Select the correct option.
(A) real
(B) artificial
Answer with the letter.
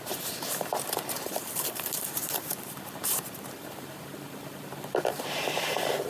B